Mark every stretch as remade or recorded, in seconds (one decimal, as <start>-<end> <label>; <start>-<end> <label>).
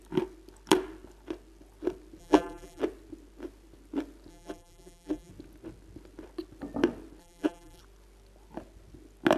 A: 0.0-2.2 recorded; 2.2-2.8 remade; 2.8-4.3 recorded; 4.3-5.3 remade; 5.3-7.2 recorded; 7.2-7.8 remade; 7.8-9.4 recorded